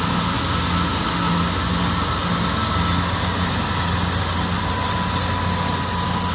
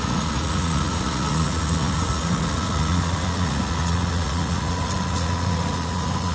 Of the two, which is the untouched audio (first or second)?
first